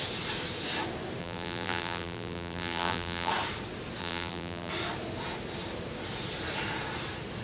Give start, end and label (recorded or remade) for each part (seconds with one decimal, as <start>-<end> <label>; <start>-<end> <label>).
0.0-1.2 recorded; 1.2-3.3 remade; 3.3-4.0 recorded; 4.0-4.7 remade; 4.7-7.4 recorded